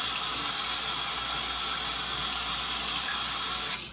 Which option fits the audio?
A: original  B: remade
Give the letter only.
A